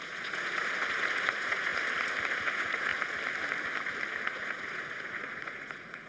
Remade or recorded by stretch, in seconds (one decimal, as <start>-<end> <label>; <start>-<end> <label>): 0.0-1.7 remade; 1.7-2.3 recorded; 2.3-2.9 remade; 2.9-4.3 recorded; 4.3-6.1 remade